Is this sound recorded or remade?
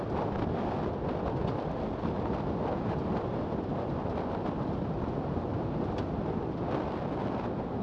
recorded